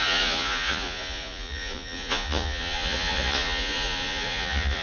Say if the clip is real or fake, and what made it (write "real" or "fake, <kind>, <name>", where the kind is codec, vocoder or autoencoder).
fake, vocoder, Vocos